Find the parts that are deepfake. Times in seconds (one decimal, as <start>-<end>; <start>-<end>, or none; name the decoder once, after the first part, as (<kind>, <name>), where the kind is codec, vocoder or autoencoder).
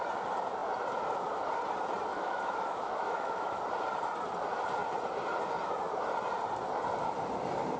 2.1-3.6 (autoencoder, DAC-VAE)